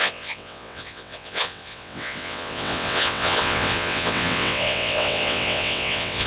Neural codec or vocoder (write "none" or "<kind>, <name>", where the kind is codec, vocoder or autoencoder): vocoder, WaveNeXt